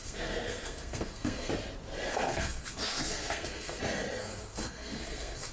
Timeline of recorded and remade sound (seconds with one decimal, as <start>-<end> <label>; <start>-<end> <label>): 0.0-1.5 remade; 1.5-2.1 recorded; 2.1-3.8 remade; 3.8-4.2 recorded; 4.2-5.5 remade